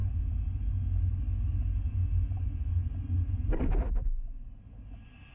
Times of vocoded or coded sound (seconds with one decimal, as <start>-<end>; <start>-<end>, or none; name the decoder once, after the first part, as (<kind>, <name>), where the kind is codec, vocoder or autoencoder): 0.0-0.6 (vocoder, Vocos)